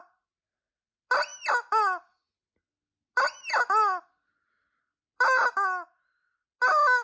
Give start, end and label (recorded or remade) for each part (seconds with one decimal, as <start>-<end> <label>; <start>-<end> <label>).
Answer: 0.0-7.0 recorded